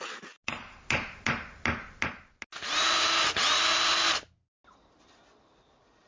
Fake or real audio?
real